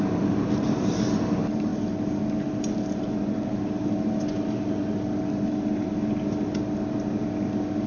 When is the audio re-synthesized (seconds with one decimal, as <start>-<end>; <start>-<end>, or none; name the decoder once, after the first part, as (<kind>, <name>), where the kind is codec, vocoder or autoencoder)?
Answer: none